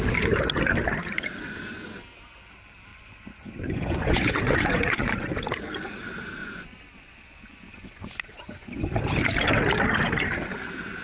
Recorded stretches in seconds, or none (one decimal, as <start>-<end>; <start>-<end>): 0.0-2.9; 5.4-6.4; 9.0-11.0